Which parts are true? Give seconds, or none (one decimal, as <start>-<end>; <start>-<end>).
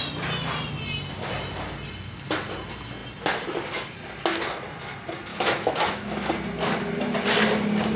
0.0-5.3; 6.3-8.0